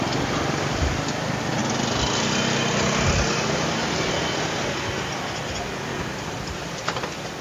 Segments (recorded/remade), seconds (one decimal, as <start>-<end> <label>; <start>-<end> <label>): 0.0-1.6 remade; 1.6-6.0 recorded; 6.0-7.4 remade